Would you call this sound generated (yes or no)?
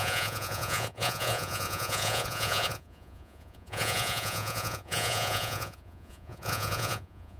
yes